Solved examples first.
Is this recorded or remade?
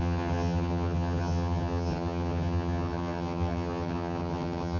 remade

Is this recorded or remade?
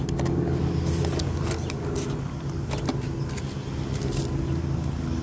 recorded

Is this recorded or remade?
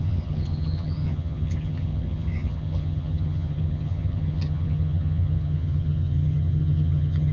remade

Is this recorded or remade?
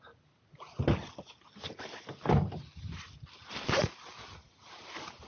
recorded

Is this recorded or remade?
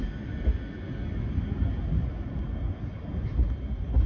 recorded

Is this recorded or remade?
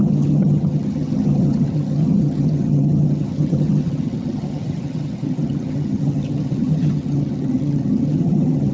remade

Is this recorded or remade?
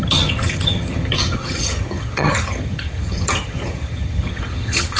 remade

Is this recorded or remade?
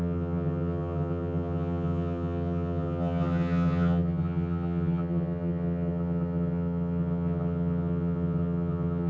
remade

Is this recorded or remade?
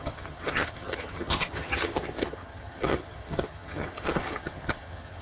remade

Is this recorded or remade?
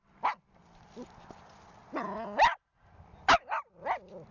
recorded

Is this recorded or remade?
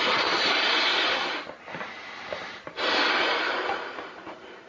recorded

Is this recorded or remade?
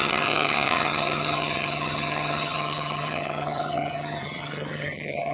remade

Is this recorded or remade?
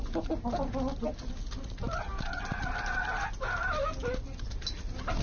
recorded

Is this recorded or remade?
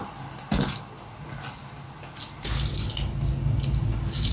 recorded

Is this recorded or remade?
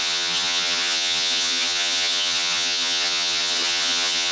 remade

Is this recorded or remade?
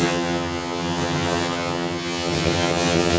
remade